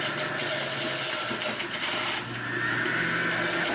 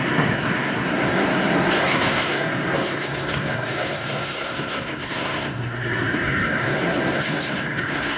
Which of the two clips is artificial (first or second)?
second